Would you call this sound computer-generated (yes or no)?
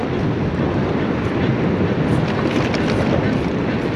no